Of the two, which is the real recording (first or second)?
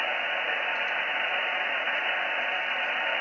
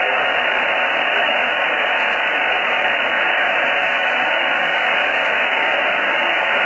first